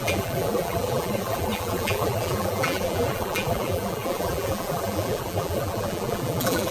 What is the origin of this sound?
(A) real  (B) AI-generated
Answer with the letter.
B